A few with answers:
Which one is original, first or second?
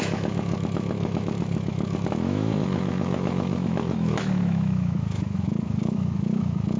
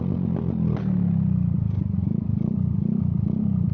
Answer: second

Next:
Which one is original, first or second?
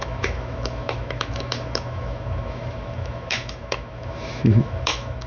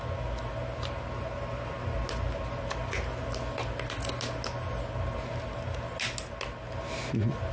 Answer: second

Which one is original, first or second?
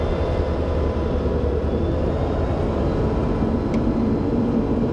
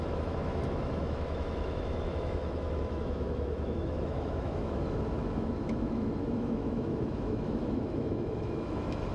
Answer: first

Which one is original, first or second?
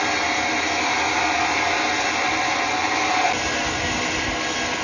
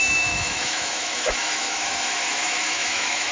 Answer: first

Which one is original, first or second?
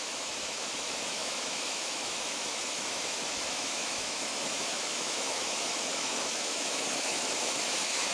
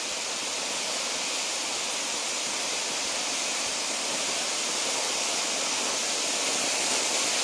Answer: second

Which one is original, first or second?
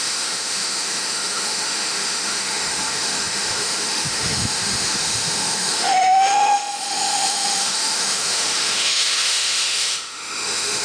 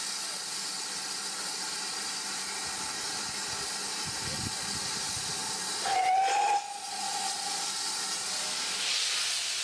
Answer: second